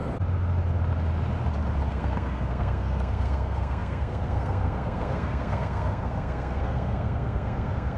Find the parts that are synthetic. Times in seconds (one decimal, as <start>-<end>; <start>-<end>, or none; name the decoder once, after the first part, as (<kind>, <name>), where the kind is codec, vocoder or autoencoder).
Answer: 1.9-8.0 (codec, SNAC)